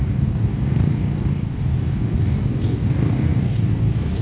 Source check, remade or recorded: remade